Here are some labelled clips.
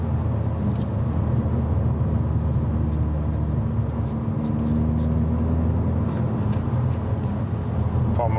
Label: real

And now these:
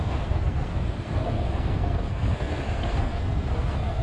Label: fake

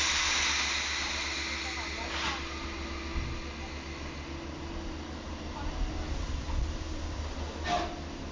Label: real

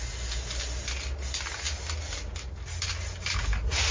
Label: real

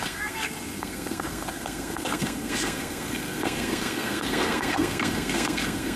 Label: fake